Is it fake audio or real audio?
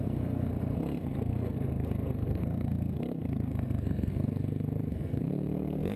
fake